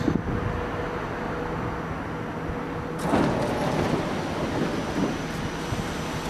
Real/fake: real